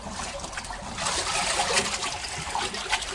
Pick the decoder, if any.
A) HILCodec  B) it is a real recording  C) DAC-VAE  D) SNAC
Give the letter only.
B